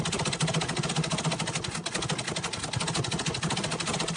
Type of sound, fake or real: real